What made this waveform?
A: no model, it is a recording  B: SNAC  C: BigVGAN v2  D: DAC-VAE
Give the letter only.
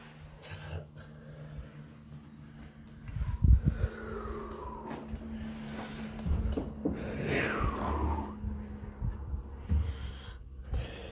A